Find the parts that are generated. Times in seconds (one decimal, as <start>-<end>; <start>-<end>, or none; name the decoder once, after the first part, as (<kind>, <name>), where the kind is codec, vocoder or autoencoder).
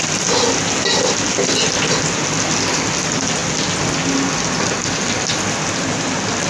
none